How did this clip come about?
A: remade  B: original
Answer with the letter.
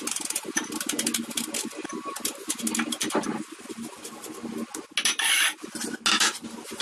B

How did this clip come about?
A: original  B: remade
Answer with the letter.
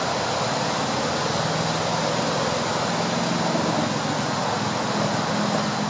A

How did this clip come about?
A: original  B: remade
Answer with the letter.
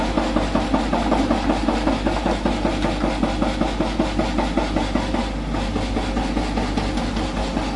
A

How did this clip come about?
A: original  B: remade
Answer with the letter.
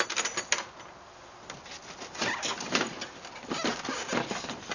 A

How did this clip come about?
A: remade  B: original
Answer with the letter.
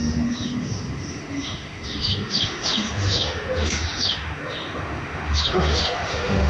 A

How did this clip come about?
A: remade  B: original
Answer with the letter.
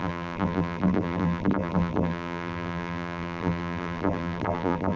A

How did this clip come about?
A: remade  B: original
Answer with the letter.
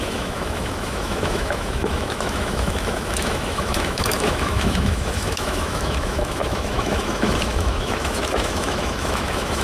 A